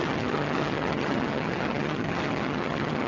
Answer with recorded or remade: remade